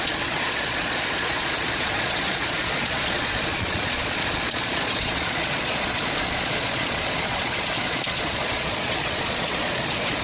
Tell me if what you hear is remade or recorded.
remade